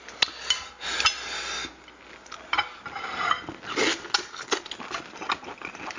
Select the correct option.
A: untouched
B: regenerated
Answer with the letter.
A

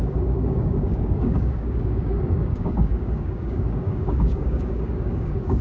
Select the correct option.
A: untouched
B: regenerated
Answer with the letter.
B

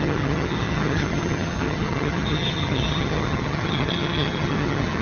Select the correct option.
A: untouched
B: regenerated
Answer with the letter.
B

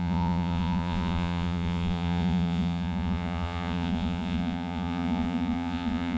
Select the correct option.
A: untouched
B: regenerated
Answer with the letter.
B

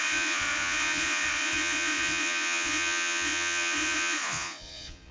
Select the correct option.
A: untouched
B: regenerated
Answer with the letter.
B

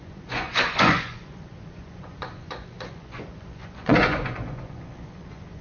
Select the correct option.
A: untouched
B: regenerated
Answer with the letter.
B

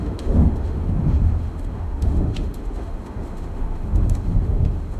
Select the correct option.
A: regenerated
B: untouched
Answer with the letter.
A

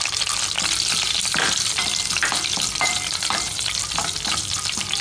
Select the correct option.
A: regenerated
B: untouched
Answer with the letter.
A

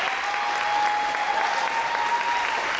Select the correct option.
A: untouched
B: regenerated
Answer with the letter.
A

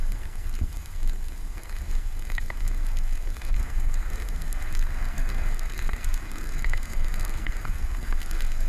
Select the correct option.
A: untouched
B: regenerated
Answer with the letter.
B